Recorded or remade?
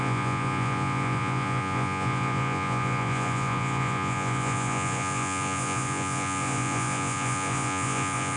remade